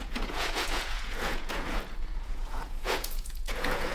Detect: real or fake fake